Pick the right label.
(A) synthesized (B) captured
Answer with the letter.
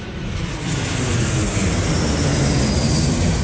B